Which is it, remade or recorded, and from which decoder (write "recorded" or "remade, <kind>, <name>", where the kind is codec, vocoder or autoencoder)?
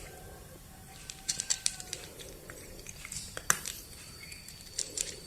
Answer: remade, vocoder, BigVGAN v2